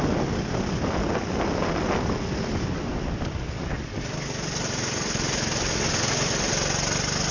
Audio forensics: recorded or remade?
recorded